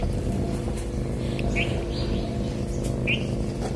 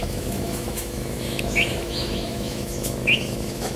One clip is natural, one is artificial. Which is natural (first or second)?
first